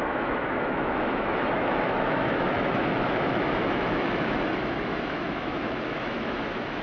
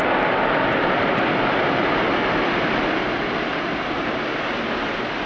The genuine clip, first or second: second